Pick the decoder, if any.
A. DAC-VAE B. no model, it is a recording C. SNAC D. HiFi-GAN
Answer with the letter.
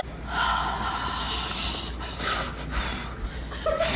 B